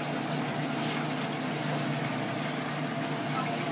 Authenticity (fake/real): real